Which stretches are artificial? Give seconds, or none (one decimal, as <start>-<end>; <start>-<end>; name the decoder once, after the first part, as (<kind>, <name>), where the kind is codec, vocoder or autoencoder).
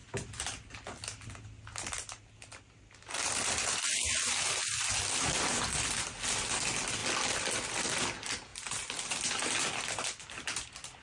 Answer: none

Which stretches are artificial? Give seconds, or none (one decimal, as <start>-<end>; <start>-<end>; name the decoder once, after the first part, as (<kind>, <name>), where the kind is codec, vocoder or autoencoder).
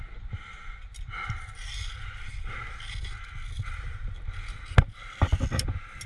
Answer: none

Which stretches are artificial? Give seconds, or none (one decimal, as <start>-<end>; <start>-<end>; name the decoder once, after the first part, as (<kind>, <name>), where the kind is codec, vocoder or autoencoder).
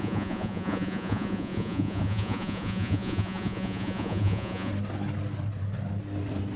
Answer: 0.0-4.7 (vocoder, Vocos)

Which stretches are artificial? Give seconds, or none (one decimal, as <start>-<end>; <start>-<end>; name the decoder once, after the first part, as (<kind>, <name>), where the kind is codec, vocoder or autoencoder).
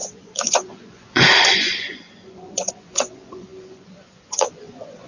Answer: 0.0-5.1 (vocoder, Vocos)